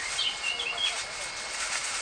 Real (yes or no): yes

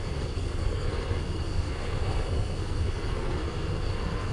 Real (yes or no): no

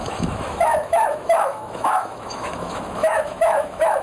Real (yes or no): no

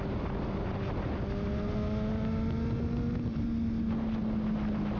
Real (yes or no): yes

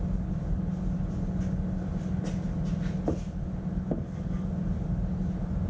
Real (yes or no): yes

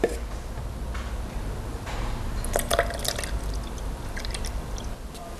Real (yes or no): yes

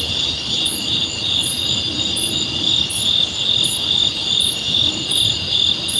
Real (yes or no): yes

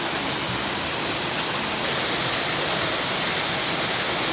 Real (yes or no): yes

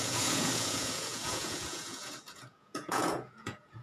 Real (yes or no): no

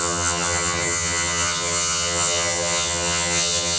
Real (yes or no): no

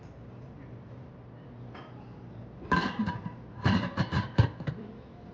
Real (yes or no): no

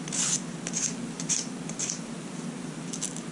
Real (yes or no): yes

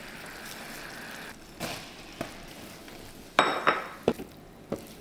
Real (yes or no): no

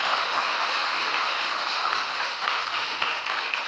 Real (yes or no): no